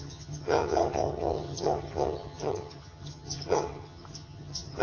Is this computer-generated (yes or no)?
yes